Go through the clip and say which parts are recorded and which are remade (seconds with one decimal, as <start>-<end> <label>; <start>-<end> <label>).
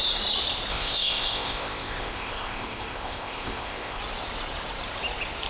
0.0-0.7 recorded; 0.7-4.0 remade; 4.0-5.5 recorded